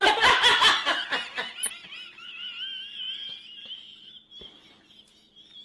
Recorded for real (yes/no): yes